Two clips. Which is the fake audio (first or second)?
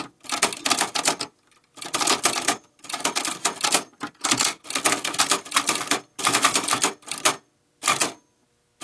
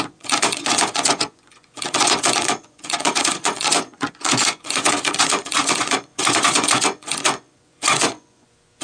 second